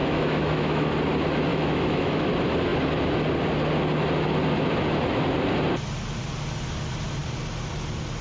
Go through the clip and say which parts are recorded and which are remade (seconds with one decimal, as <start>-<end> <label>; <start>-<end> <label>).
0.0-0.9 remade; 0.9-1.5 recorded; 1.5-2.3 remade; 2.3-8.2 recorded